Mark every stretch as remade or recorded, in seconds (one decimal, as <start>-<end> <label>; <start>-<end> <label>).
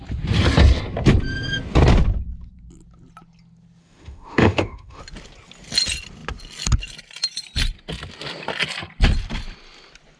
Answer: 0.0-3.8 recorded; 3.8-5.0 remade; 5.0-10.2 recorded